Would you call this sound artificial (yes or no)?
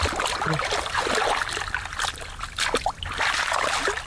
no